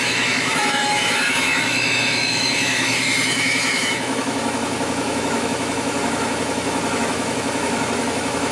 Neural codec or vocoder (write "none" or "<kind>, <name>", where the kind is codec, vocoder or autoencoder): autoencoder, DAC-VAE